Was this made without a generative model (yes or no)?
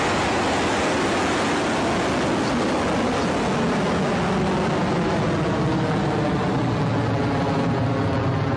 yes